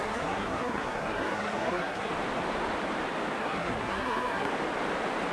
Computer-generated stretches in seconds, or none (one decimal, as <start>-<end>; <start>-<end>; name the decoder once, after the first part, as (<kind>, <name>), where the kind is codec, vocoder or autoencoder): 0.0-2.1 (codec, SNAC); 3.4-4.5